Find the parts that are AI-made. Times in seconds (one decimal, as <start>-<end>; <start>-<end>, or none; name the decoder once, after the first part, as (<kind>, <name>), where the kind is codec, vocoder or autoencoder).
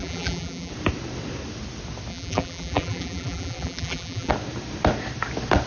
0.0-0.7 (vocoder, BigVGAN v2); 2.1-4.3